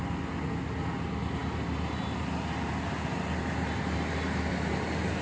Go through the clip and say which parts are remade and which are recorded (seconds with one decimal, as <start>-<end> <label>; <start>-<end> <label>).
0.0-5.2 recorded